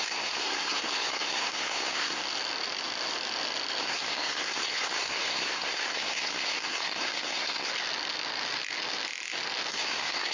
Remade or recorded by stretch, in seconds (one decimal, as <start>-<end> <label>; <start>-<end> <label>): 0.0-2.2 remade; 2.2-3.8 recorded; 3.8-7.7 remade; 7.7-9.7 recorded; 9.7-10.3 remade